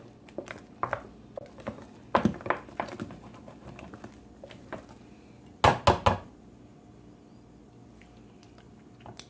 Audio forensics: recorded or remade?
recorded